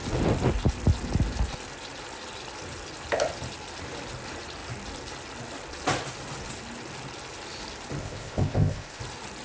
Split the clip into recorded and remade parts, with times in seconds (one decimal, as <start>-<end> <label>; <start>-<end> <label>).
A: 0.0-8.0 recorded; 8.0-9.0 remade; 9.0-9.4 recorded